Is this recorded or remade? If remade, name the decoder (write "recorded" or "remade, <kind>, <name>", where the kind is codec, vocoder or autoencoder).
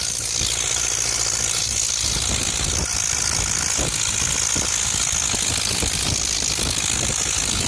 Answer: recorded